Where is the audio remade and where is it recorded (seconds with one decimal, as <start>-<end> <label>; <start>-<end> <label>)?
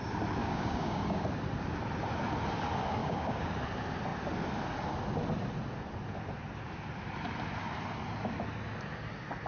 0.0-0.4 recorded; 0.4-1.2 remade; 1.2-3.0 recorded; 3.0-3.5 remade; 3.5-9.5 recorded